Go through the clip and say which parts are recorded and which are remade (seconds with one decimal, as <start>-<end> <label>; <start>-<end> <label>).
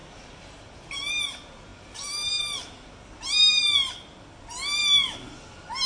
0.0-5.9 recorded